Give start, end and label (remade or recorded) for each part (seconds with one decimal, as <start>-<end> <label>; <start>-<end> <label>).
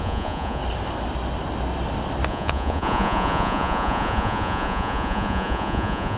0.0-0.6 remade; 0.6-2.3 recorded; 2.3-6.2 remade